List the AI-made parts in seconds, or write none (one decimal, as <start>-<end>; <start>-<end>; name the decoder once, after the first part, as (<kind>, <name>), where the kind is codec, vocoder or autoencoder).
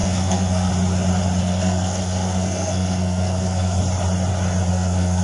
0.0-0.7 (codec, SNAC); 1.4-3.8; 4.7-5.2